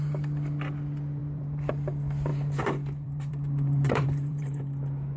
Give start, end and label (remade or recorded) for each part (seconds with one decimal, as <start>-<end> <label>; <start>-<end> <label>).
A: 0.0-1.2 recorded; 1.2-1.7 remade; 1.7-2.3 recorded; 2.3-4.6 remade; 4.6-5.2 recorded